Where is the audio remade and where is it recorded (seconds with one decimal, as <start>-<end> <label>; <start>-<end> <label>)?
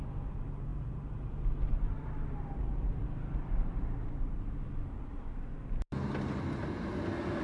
0.0-7.4 recorded